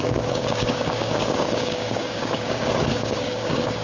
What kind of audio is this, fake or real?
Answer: fake